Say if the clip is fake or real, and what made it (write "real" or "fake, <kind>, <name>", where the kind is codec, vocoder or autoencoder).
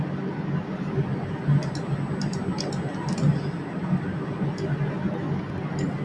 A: real